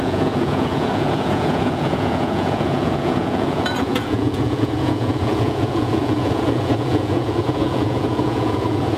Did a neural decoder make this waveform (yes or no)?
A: yes